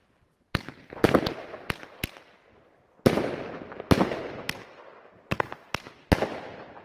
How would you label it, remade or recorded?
recorded